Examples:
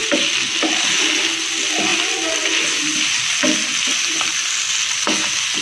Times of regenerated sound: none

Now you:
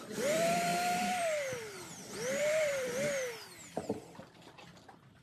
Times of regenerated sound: 0.0-3.2; 4.3-5.2